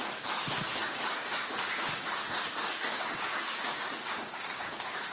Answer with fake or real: fake